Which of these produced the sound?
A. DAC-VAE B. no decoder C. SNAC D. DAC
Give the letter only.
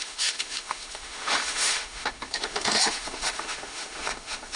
A